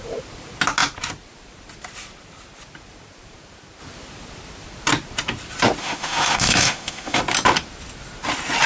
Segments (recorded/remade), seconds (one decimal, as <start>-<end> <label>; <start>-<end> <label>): 0.0-5.8 recorded; 5.8-7.2 remade; 7.2-8.7 recorded